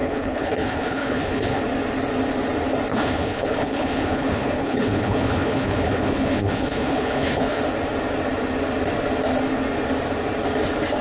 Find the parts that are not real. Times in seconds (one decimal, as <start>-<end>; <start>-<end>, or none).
0.0-1.6; 2.9-7.6